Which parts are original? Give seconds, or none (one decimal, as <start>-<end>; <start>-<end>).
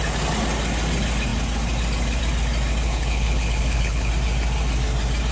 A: 0.0-2.9; 4.1-5.3